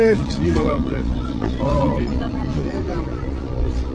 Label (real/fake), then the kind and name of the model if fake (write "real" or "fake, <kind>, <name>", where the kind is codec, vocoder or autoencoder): fake, vocoder, Vocos